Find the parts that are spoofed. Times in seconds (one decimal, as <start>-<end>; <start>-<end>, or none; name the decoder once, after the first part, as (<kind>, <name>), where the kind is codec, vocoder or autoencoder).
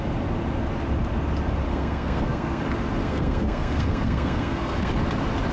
1.7-2.6 (codec, SNAC); 3.0-4.9